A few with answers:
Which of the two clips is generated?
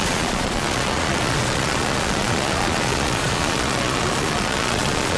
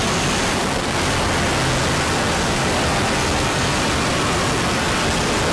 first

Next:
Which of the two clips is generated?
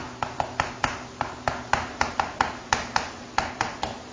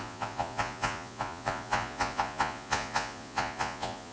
second